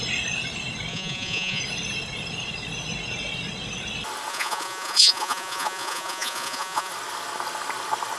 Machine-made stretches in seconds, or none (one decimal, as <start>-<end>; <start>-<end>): 0.9-1.6; 4.3-6.9